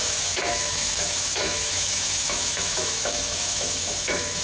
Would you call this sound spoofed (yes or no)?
yes